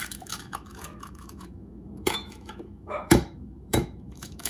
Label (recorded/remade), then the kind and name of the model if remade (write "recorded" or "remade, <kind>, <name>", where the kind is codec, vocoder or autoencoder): remade, autoencoder, DAC-VAE